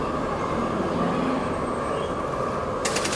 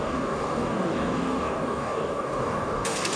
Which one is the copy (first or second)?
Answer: second